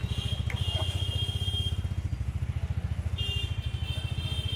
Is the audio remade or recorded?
recorded